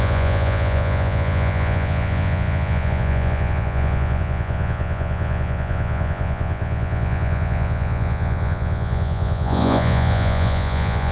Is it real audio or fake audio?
fake